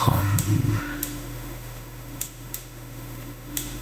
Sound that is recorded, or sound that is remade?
remade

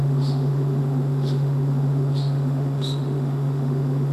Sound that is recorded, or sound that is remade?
remade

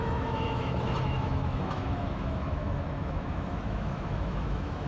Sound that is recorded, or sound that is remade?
remade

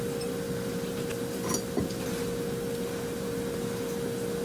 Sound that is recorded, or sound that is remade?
recorded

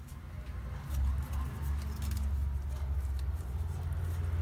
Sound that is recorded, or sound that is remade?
recorded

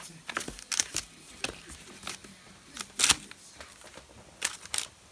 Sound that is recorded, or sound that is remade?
recorded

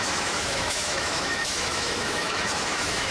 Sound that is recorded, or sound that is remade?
remade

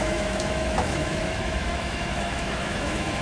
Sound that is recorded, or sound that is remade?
remade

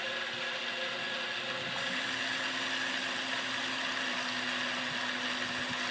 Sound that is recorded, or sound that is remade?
recorded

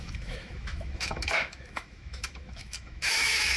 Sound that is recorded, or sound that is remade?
remade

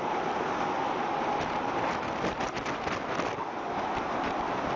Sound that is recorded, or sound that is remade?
recorded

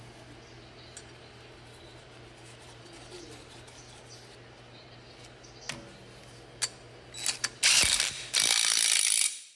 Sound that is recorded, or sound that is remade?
recorded